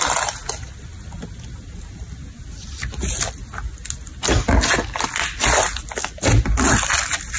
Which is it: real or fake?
real